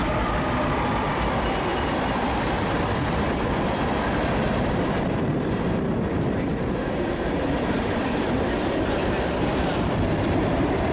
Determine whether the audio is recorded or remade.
remade